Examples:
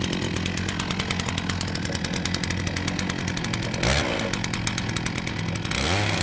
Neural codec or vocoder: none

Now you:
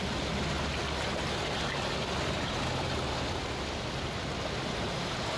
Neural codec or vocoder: none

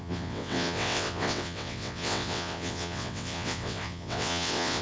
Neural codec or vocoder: vocoder, WaveNeXt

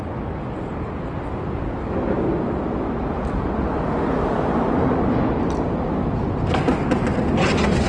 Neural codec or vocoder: none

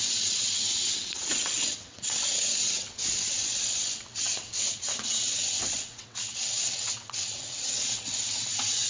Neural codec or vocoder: vocoder, WaveNeXt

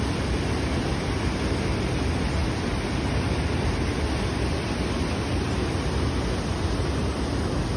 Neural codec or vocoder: none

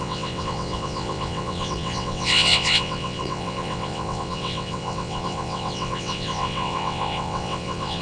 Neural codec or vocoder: vocoder, WaveNeXt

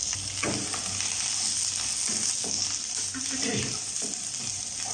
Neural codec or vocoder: none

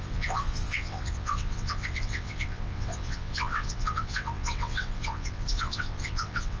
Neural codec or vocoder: vocoder, WaveNeXt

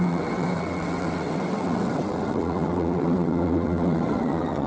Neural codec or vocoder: vocoder, WaveNeXt